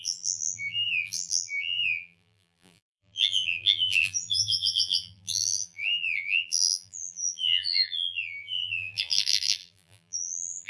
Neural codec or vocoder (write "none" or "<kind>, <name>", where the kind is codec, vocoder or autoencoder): vocoder, BigVGAN v2